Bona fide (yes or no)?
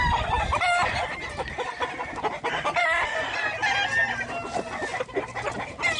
yes